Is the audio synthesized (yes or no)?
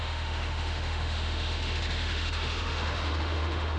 yes